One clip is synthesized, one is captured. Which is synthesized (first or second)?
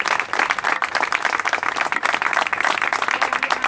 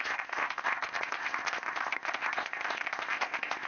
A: second